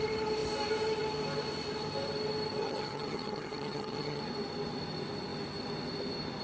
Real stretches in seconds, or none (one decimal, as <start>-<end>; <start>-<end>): 0.0-2.6; 4.2-6.4

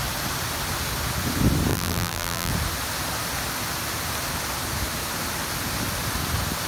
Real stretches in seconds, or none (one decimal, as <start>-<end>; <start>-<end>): 0.0-1.7; 2.5-6.7